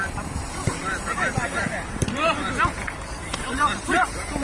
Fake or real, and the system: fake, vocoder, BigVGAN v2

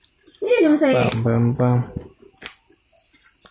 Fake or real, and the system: real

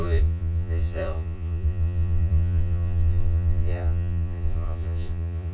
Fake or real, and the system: fake, vocoder, Vocos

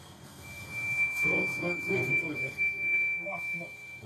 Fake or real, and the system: fake, codec, SNAC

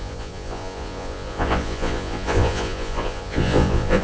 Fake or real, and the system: fake, vocoder, Vocos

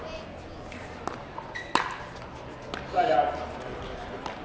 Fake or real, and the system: real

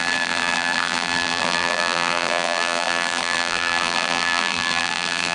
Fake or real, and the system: fake, vocoder, BigVGAN v2